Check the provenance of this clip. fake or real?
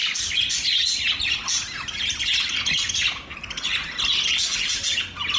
real